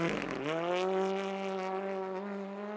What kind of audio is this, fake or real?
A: real